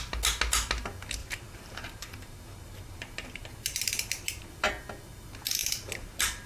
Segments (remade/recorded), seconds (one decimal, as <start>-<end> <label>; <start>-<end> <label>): 0.0-1.2 recorded; 1.2-4.5 remade; 4.5-5.6 recorded; 5.6-6.5 remade